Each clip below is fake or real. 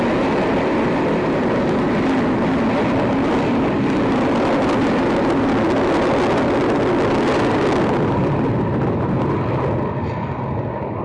real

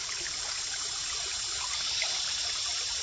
real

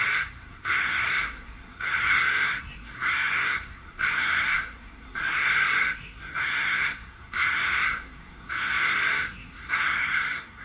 fake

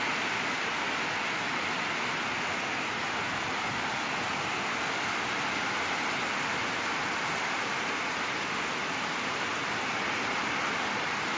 real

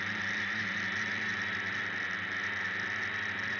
real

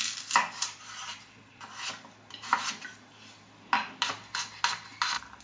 real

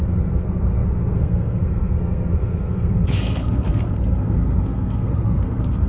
fake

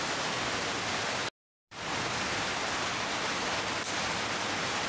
real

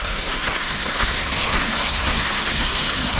fake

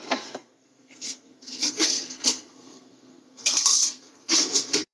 fake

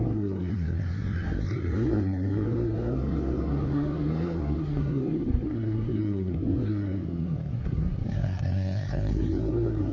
fake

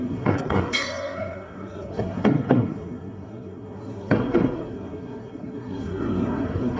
fake